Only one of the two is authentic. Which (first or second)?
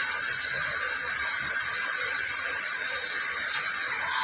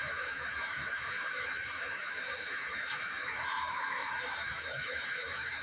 first